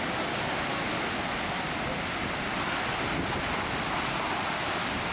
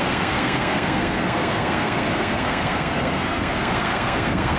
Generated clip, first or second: second